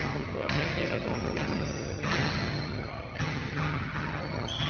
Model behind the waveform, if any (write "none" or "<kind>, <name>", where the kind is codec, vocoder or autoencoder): vocoder, HiFi-GAN